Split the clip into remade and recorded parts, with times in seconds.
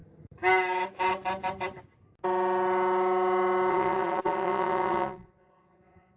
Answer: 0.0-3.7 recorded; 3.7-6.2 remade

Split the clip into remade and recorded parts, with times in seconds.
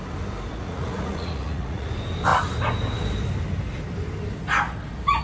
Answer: 0.0-0.5 recorded; 0.5-1.9 remade; 1.9-5.2 recorded